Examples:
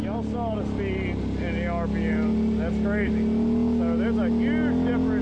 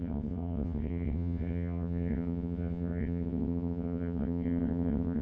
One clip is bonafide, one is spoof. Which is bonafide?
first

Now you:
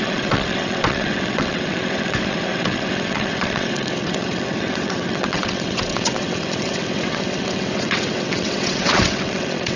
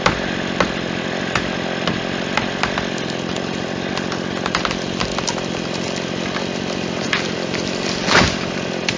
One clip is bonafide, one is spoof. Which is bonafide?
second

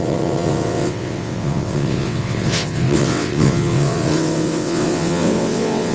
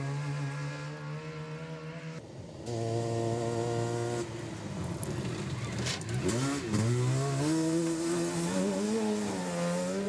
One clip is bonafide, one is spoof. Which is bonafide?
second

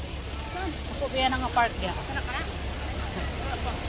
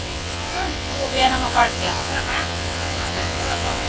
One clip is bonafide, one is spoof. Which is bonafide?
first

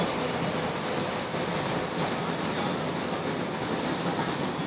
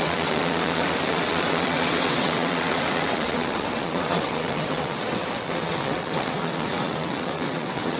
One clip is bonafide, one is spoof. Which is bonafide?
first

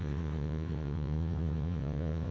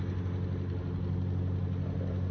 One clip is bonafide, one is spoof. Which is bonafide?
second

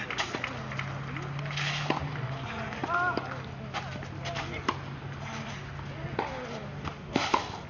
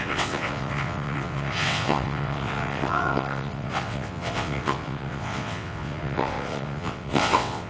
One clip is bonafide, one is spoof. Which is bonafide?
first